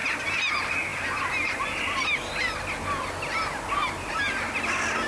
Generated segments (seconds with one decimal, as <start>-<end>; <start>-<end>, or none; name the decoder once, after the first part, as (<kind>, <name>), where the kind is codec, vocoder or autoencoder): none